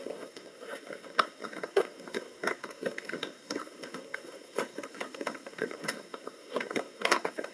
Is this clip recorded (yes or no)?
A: no